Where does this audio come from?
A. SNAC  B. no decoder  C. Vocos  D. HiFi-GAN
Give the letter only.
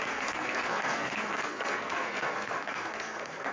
A